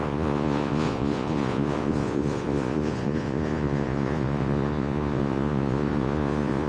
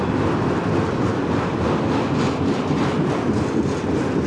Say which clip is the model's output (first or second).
first